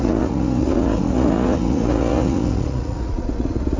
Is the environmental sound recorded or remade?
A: remade